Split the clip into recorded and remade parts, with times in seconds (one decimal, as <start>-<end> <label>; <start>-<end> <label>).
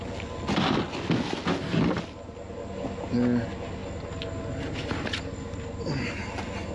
0.0-6.7 recorded